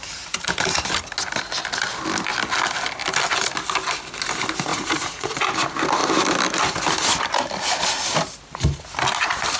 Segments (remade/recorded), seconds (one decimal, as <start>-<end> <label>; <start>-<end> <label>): 0.0-4.7 recorded; 4.7-5.4 remade; 5.4-9.6 recorded